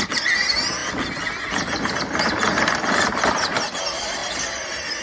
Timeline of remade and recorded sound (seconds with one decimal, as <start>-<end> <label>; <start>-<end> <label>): 0.0-5.0 recorded